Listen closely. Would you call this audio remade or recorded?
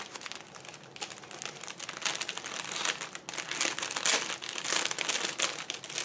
recorded